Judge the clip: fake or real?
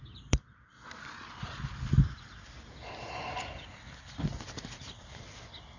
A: real